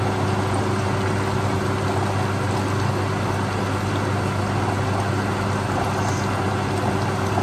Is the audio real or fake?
real